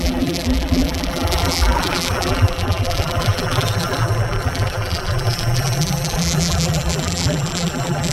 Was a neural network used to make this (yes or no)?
yes